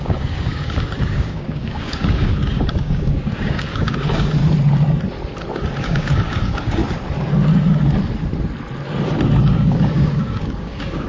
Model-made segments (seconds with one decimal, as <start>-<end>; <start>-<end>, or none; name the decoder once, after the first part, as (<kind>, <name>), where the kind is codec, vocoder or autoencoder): 0.0-4.4 (codec, DAC); 5.8-6.8; 9.4-11.1